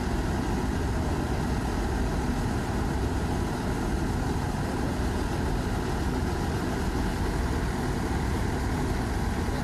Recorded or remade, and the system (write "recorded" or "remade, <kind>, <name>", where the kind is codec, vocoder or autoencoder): recorded